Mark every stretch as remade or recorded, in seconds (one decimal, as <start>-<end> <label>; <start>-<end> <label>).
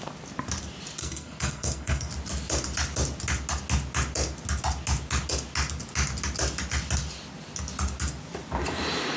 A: 0.0-1.0 recorded; 1.0-2.1 remade; 2.1-9.2 recorded